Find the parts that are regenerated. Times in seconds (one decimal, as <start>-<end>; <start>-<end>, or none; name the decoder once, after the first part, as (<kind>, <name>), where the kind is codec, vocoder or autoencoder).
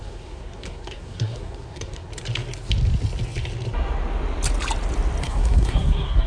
0.0-2.1 (codec, SNAC); 5.2-6.3